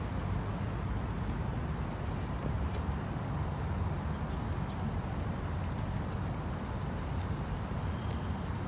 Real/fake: real